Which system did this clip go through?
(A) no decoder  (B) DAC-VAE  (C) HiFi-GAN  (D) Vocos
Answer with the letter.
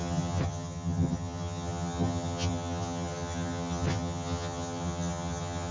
C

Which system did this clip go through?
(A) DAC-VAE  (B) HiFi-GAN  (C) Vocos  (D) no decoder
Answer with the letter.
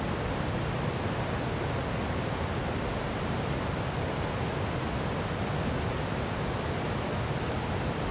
D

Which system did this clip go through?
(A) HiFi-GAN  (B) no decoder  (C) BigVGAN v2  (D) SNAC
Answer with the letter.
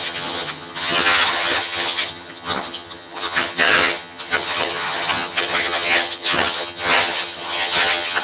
A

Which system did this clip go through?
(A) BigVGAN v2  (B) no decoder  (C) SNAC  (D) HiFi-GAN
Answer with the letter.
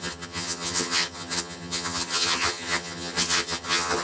D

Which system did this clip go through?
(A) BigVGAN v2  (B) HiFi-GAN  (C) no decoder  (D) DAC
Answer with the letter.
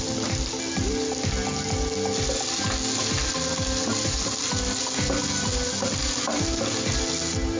C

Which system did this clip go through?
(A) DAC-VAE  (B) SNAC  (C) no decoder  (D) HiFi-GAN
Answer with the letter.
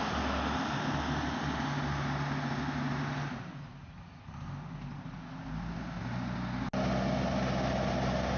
C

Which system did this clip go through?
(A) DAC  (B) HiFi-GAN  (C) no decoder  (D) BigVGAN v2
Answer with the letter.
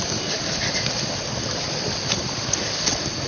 C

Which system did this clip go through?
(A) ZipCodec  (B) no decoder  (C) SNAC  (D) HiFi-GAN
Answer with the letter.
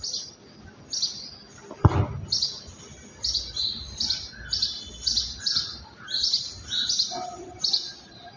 B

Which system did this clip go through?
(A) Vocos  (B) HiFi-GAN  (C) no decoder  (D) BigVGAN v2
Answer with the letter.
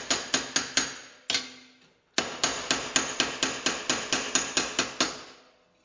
C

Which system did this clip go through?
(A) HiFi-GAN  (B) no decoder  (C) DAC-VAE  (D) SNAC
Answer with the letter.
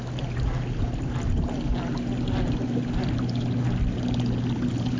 B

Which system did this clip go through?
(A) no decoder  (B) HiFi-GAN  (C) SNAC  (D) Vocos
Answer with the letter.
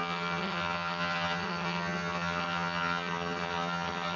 B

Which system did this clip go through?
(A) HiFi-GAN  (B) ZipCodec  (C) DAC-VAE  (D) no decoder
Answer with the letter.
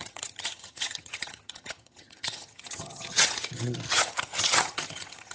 A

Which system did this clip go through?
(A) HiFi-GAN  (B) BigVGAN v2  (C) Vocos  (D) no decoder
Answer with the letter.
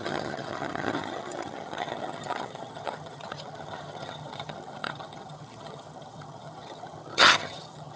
A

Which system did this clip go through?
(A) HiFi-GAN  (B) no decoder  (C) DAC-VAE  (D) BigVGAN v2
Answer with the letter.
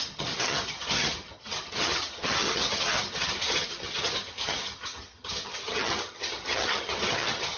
A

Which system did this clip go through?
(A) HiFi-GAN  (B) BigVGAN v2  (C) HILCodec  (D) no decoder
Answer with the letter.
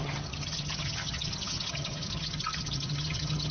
A